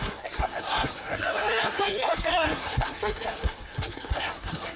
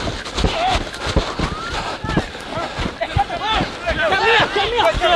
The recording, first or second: second